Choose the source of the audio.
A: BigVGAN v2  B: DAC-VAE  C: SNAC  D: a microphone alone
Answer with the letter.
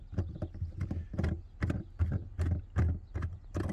D